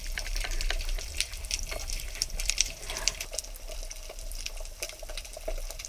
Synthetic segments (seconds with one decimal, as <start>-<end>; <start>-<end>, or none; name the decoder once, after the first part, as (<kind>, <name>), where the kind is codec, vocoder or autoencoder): 0.0-5.3 (vocoder, BigVGAN v2)